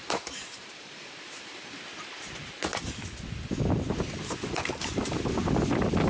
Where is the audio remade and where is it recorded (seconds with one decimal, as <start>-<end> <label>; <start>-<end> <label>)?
0.0-1.8 remade; 1.8-6.1 recorded

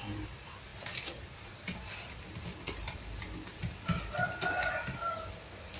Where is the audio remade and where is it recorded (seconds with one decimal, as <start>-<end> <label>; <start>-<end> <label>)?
0.0-5.8 recorded

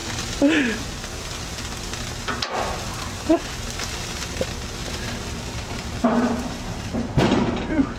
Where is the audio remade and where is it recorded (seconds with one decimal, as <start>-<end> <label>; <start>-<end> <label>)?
0.0-2.9 recorded; 2.9-3.5 remade; 3.5-4.8 recorded; 4.8-7.1 remade; 7.1-8.0 recorded

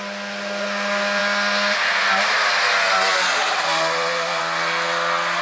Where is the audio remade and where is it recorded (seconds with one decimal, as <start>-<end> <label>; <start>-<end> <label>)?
0.0-5.4 recorded

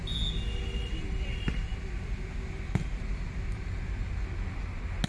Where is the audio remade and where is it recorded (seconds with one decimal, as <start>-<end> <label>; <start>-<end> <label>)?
0.0-0.9 recorded; 0.9-1.7 remade; 1.7-5.1 recorded

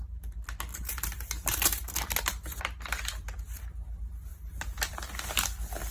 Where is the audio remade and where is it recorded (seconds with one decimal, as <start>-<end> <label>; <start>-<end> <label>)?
0.0-0.7 recorded; 0.7-2.6 remade; 2.6-4.3 recorded; 4.3-5.0 remade; 5.0-5.9 recorded

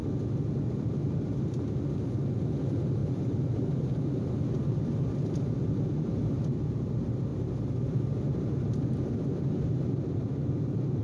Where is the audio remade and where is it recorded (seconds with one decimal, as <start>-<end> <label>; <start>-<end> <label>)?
0.0-2.6 recorded; 2.6-11.0 remade

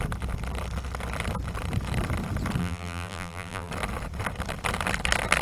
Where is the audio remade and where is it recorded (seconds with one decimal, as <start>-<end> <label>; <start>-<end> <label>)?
0.0-2.6 recorded; 2.6-3.7 remade; 3.7-5.4 recorded